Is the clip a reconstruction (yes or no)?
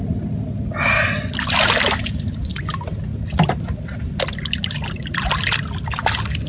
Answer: no